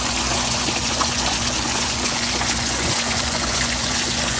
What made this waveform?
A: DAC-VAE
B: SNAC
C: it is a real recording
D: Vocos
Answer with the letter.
D